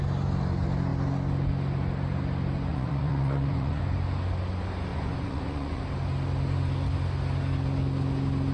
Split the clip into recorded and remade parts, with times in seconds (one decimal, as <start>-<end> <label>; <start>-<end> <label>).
0.0-2.7 recorded; 2.7-3.8 remade; 3.8-4.9 recorded; 4.9-5.8 remade; 5.8-8.5 recorded